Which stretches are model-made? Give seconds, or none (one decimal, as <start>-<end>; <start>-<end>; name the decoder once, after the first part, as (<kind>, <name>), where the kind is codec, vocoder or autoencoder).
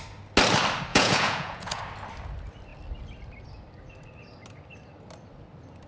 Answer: 0.9-1.8 (vocoder, Vocos)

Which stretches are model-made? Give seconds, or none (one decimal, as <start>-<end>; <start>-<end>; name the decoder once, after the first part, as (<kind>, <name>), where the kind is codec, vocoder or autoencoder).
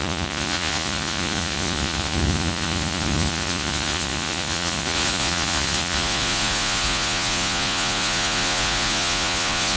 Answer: 0.0-9.8 (vocoder, Vocos)